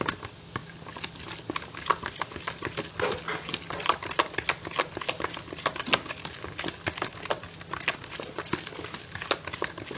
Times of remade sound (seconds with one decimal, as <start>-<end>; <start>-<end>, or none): none